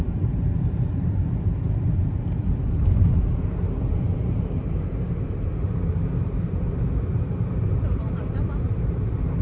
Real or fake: fake